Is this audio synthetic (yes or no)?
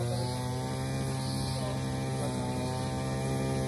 no